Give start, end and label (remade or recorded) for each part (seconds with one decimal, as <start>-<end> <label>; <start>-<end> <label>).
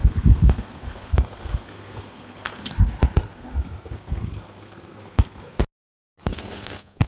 0.0-2.6 remade; 2.6-3.2 recorded; 3.2-5.6 remade; 5.6-6.2 recorded; 6.2-7.1 remade